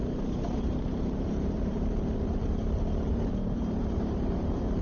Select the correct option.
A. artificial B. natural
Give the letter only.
A